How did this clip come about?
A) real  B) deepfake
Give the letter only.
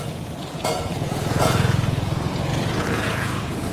B